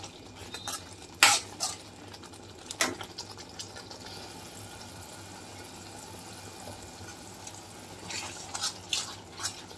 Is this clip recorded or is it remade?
recorded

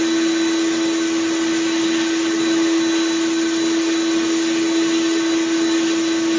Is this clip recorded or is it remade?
recorded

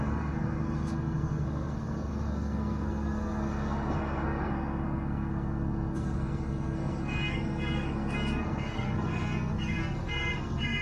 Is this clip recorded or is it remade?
remade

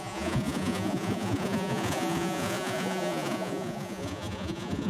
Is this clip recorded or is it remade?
remade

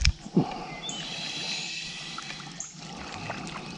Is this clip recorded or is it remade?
recorded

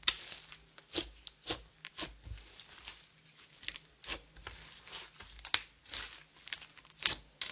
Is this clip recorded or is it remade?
recorded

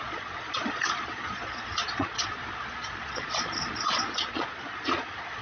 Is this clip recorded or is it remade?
remade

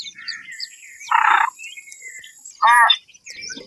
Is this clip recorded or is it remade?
remade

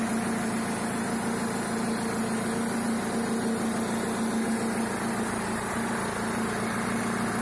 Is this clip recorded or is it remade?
recorded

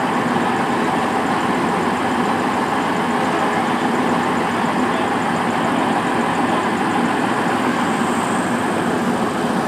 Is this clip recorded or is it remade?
recorded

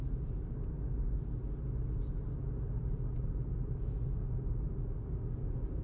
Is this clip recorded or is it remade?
recorded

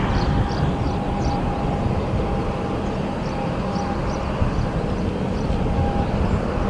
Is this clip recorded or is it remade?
recorded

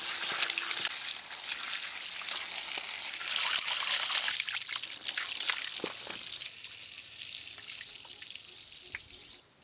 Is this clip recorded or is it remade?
recorded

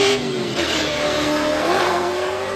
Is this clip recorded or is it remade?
remade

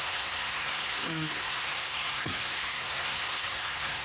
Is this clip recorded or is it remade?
remade